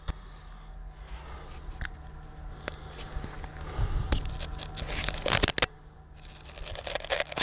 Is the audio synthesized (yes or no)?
no